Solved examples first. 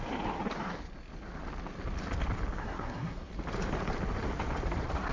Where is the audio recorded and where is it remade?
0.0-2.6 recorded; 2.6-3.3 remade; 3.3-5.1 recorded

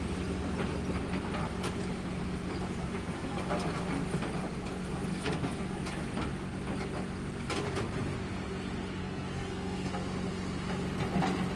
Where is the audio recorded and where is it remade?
0.0-2.8 recorded; 2.8-3.4 remade; 3.4-5.1 recorded; 5.1-5.8 remade; 5.8-9.0 recorded; 9.0-9.9 remade; 9.9-11.6 recorded

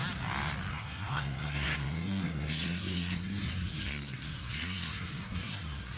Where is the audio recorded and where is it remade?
0.0-0.7 recorded; 0.7-6.0 remade

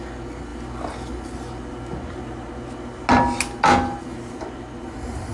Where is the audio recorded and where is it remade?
0.0-5.3 recorded

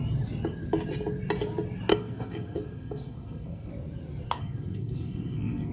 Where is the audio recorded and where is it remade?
0.0-1.9 recorded; 1.9-3.7 remade; 3.7-4.4 recorded; 4.4-5.7 remade